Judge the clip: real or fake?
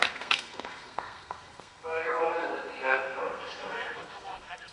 fake